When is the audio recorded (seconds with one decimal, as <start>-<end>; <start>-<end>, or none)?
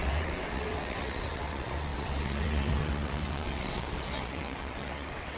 none